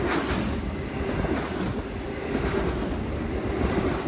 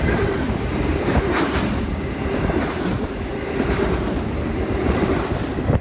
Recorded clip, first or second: first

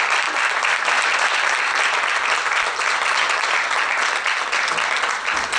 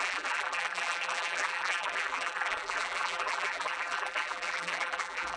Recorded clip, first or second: first